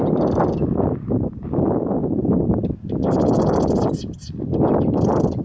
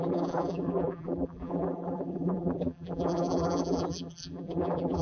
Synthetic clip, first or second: second